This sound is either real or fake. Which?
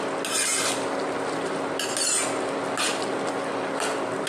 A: real